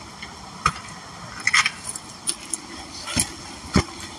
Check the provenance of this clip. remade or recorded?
recorded